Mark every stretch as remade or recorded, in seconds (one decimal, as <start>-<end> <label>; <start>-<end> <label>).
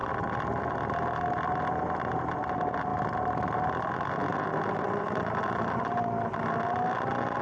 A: 0.0-7.4 recorded